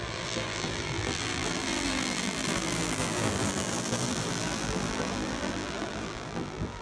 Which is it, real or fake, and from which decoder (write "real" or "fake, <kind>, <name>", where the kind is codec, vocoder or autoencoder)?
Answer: fake, vocoder, BigVGAN v2